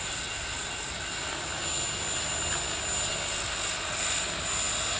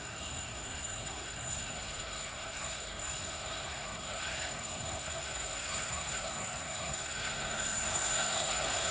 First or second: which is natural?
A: first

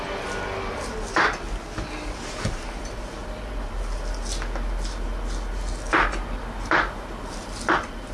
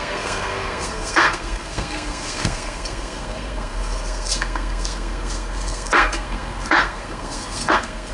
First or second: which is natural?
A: first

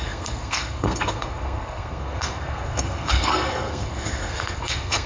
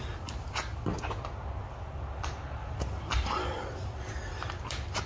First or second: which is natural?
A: second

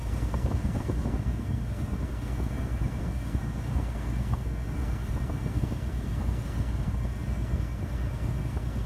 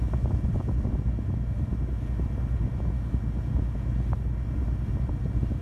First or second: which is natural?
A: second